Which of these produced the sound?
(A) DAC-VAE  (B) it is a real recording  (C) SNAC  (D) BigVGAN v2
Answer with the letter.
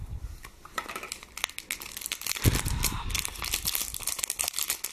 B